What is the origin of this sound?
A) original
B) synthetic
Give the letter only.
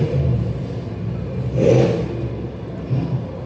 A